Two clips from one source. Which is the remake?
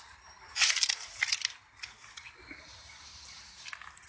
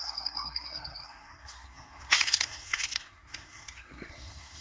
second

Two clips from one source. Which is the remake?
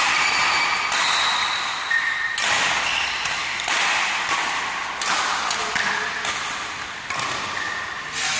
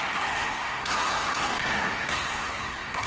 second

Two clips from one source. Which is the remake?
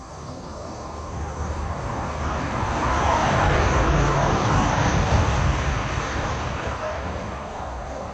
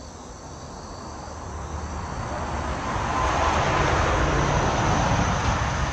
first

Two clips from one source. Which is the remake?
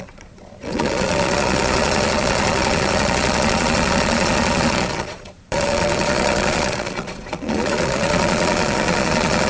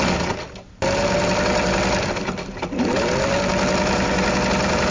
first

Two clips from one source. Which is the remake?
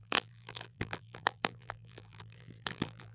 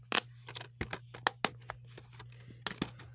first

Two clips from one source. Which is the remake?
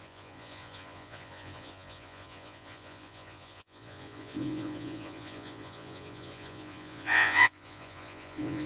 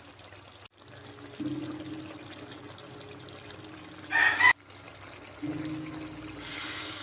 first